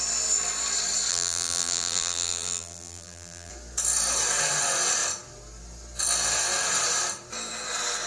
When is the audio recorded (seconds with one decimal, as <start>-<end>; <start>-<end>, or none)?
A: 0.0-1.1; 3.5-8.1